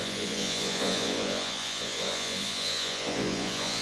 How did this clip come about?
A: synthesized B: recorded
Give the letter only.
A